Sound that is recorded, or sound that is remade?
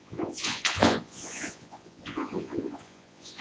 remade